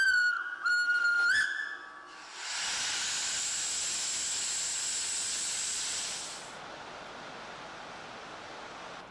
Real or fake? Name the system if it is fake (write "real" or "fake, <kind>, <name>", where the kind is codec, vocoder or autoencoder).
real